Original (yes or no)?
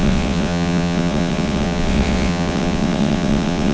no